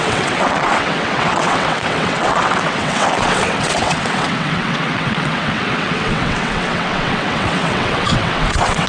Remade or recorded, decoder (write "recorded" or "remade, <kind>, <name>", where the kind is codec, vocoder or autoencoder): remade, vocoder, WaveNeXt